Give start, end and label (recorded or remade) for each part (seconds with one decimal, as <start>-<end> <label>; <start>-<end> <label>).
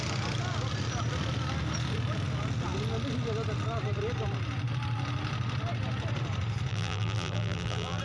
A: 0.0-6.7 recorded; 6.7-8.0 remade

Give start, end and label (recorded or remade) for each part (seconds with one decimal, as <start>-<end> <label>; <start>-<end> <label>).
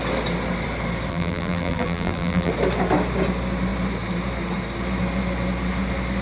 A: 0.0-1.1 recorded; 1.1-2.5 remade; 2.5-6.2 recorded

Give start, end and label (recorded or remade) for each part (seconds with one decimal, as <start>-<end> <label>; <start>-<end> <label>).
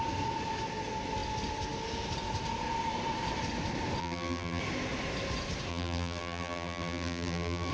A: 0.0-4.0 recorded; 4.0-4.6 remade; 4.6-5.7 recorded; 5.7-7.7 remade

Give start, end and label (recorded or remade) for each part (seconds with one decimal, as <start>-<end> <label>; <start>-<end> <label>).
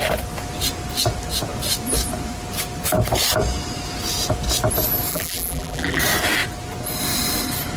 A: 0.0-5.1 recorded; 5.1-6.0 remade; 6.0-7.8 recorded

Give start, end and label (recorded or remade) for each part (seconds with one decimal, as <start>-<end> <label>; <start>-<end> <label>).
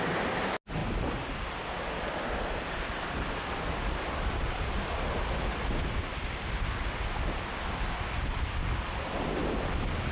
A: 0.0-10.1 recorded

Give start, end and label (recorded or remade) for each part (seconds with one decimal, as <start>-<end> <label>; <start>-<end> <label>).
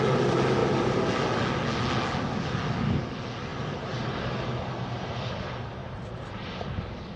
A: 0.0-3.5 recorded; 3.5-4.1 remade; 4.1-5.8 recorded; 5.8-6.6 remade; 6.6-7.2 recorded